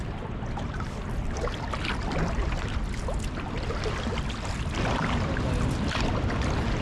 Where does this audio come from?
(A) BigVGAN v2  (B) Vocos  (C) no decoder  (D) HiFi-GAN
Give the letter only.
C